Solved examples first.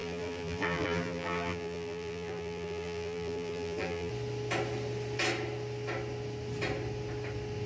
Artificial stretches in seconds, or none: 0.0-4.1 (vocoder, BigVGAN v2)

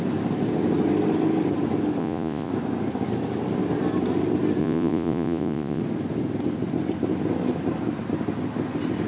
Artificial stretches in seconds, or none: 2.0-2.5 (vocoder, Vocos); 4.6-5.8